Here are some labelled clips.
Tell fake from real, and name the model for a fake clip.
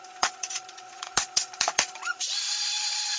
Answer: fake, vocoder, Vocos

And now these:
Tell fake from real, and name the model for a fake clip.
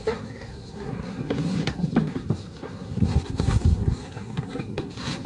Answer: fake, codec, SNAC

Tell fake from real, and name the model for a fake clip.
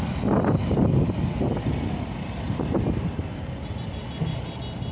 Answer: real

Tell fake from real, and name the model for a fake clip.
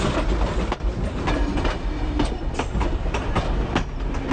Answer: real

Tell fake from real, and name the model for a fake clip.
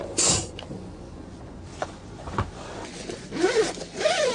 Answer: fake, vocoder, Vocos